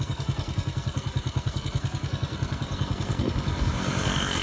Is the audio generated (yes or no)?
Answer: yes